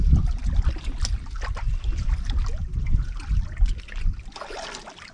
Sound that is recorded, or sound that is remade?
recorded